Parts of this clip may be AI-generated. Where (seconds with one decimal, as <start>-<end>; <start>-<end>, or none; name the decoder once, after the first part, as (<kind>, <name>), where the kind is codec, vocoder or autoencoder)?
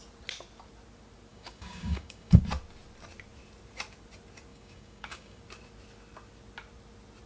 1.3-2.4 (codec, DAC); 4.5-5.4